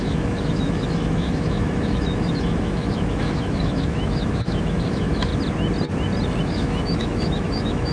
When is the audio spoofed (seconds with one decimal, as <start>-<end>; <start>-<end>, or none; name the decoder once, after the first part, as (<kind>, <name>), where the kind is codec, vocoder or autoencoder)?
0.0-5.3 (autoencoder, DAC-VAE); 6.4-7.9